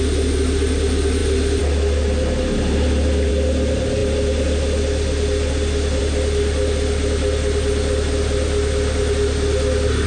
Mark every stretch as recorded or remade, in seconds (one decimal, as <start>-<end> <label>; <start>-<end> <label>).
0.0-10.1 recorded